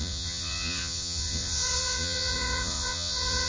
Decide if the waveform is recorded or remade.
remade